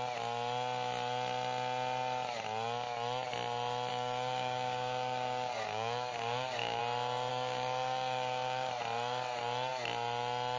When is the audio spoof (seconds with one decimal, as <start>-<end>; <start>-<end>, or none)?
3.9-6.8; 7.3-8.7